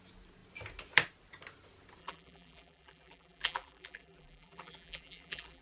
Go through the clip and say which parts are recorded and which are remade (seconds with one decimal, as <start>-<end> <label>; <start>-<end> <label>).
0.0-2.0 recorded; 2.0-5.6 remade